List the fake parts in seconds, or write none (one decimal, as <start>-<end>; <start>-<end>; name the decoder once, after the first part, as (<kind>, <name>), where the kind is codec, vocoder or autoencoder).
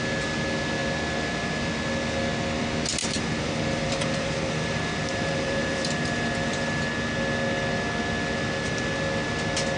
3.0-6.8 (vocoder, BigVGAN v2)